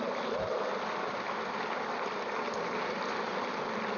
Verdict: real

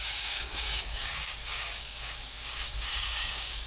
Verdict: fake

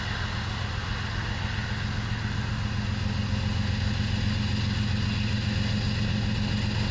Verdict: real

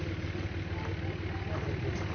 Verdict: real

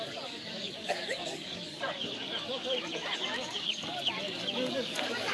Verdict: fake